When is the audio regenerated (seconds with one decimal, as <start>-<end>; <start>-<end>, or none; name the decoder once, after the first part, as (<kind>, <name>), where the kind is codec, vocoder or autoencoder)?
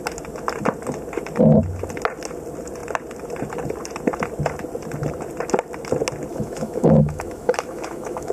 6.3-8.3 (autoencoder, DAC-VAE)